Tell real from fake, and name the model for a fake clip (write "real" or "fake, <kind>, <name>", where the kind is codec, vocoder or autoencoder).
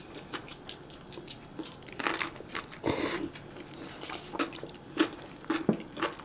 real